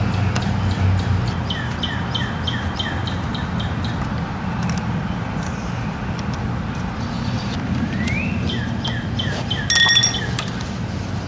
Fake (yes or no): no